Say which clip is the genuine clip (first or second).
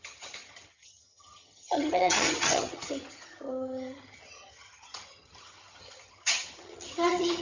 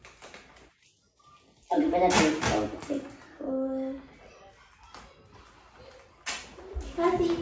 second